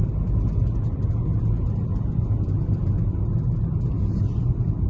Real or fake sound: real